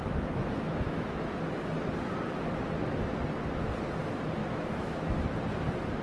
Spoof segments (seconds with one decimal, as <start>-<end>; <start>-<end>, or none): 0.0-1.3; 4.4-5.1